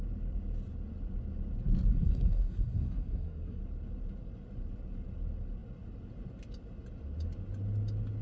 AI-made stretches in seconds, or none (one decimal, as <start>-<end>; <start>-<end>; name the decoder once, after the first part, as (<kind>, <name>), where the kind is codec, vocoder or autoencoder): 1.9-3.6 (codec, SNAC)